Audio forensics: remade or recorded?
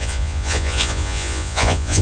remade